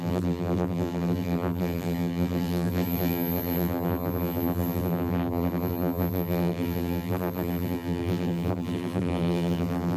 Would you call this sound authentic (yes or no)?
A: no